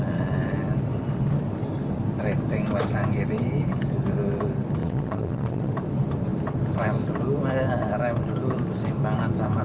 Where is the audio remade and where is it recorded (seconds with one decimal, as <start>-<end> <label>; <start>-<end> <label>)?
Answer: 0.0-4.8 recorded; 4.8-5.7 remade; 5.7-9.6 recorded